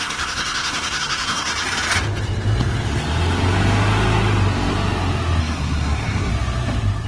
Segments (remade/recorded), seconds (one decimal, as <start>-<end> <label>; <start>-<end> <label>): 0.0-1.5 remade; 1.5-5.4 recorded; 5.4-6.3 remade; 6.3-7.1 recorded